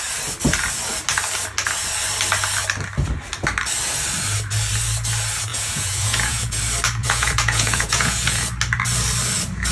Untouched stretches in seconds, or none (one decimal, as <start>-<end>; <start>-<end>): 0.0-5.5; 6.6-7.0; 8.5-9.7